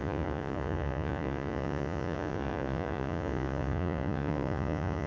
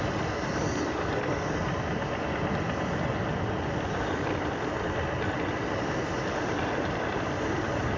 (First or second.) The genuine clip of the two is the second